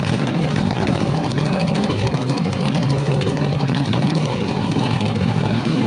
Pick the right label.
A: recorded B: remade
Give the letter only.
B